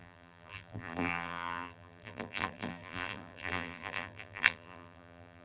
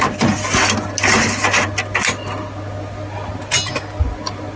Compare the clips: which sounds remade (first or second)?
first